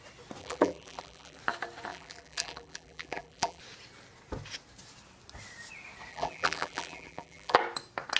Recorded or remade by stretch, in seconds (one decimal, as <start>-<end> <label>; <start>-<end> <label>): 0.0-0.4 recorded; 0.4-1.4 remade; 1.4-1.9 recorded; 1.9-3.6 remade; 3.6-6.1 recorded; 6.1-7.6 remade; 7.6-8.2 recorded